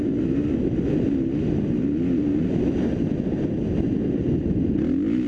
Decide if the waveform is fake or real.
real